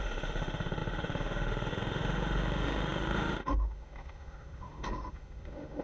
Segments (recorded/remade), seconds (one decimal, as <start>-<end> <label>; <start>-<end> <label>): 0.0-5.8 remade